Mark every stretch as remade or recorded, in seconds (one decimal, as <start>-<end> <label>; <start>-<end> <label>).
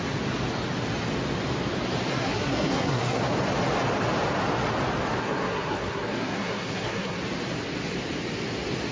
0.0-2.1 recorded; 2.1-3.2 remade; 3.2-5.2 recorded; 5.2-7.2 remade; 7.2-8.9 recorded